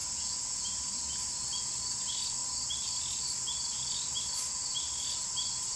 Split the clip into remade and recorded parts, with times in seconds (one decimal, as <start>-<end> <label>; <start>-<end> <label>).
0.0-0.6 remade; 0.6-5.8 recorded